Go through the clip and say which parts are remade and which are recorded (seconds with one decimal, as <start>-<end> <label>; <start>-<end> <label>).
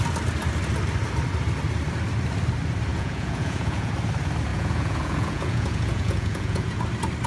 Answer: 0.0-2.9 recorded; 2.9-3.9 remade; 3.9-4.5 recorded; 4.5-6.8 remade; 6.8-7.3 recorded